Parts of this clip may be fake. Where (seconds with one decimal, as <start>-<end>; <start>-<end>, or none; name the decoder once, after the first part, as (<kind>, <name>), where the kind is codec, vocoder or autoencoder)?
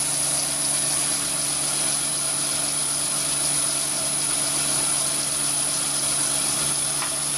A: none